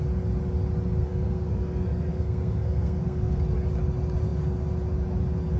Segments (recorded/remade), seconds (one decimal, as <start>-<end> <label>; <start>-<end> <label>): 0.0-1.0 recorded; 1.0-3.4 remade; 3.4-5.6 recorded